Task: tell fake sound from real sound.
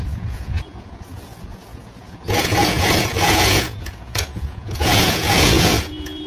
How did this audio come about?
fake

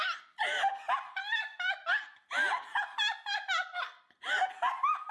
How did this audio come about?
real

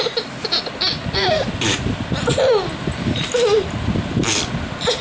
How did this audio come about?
fake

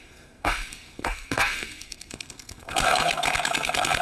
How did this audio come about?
fake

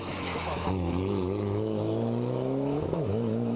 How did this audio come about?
fake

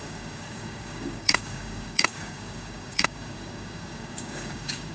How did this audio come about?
fake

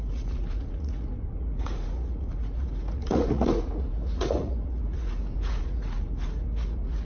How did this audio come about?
fake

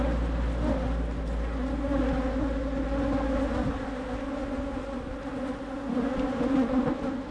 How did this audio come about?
real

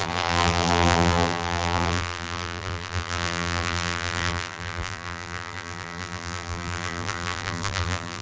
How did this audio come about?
fake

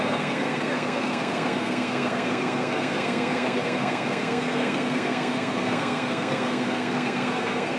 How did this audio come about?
fake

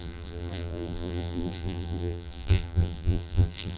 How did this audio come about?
fake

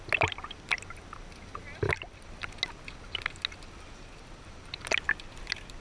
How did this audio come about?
real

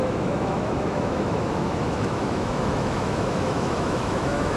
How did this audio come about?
fake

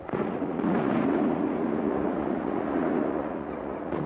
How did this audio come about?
fake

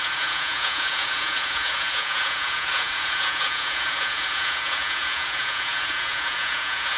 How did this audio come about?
fake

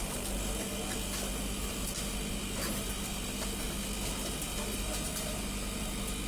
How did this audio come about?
real